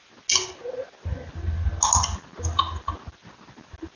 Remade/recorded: recorded